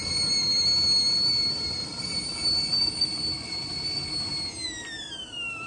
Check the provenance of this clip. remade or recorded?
recorded